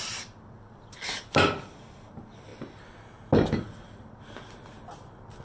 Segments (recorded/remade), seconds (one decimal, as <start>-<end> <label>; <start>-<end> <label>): 0.0-5.4 recorded